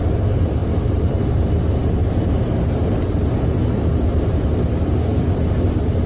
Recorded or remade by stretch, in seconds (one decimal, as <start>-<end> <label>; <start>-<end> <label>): 0.0-0.6 recorded; 0.6-1.4 remade; 1.4-2.0 recorded; 2.0-4.4 remade; 4.4-5.1 recorded; 5.1-6.1 remade